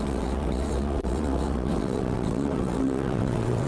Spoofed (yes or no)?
yes